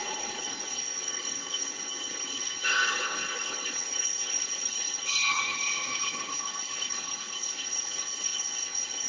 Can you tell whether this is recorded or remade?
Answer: remade